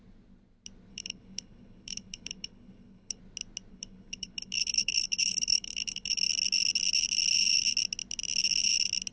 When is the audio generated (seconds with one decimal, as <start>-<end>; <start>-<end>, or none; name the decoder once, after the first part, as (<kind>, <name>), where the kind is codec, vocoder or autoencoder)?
0.9-3.2 (codec, HILCodec); 3.7-6.2